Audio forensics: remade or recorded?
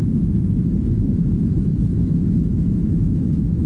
remade